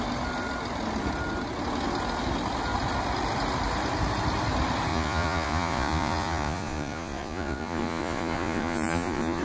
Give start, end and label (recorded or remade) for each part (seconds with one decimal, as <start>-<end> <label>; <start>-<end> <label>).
0.0-4.9 recorded; 4.9-9.4 remade